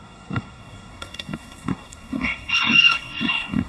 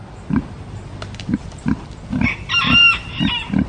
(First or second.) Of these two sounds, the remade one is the first